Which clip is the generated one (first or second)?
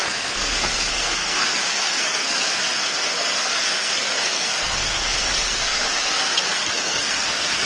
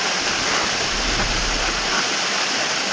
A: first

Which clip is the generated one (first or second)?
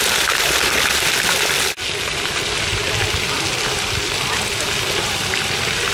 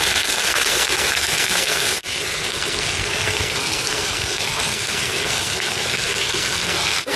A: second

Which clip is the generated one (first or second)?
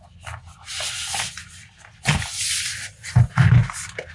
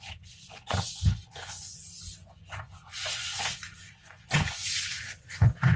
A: second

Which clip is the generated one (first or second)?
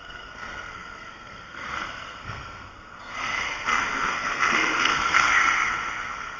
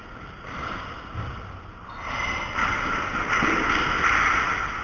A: first